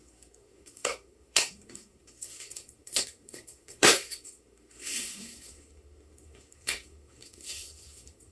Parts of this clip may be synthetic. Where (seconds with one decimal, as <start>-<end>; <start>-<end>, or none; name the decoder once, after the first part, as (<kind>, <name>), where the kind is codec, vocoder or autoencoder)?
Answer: 0.0-8.3 (codec, SNAC)